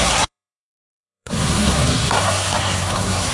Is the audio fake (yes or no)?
yes